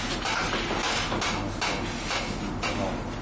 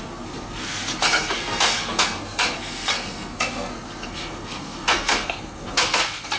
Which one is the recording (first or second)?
first